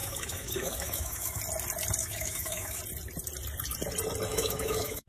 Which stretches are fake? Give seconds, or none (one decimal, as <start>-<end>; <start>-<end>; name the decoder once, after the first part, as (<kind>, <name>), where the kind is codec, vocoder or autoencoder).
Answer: 0.0-1.4 (autoencoder, DAC-VAE); 2.0-2.8; 4.3-5.1